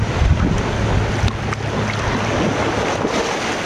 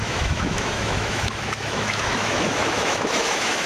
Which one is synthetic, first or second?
second